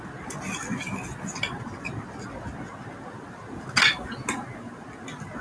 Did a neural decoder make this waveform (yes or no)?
no